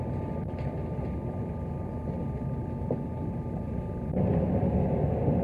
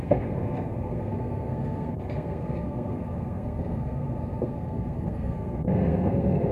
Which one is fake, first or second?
second